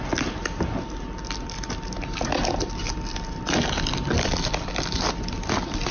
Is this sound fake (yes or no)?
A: no